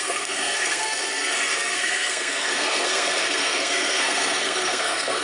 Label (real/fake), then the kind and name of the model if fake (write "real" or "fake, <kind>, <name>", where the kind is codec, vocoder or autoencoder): fake, codec, SNAC